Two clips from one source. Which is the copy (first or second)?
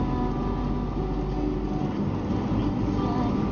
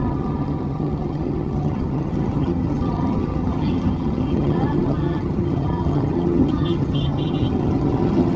second